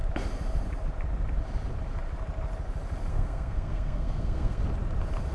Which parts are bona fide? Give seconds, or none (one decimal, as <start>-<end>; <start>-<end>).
0.0-3.1; 4.6-5.3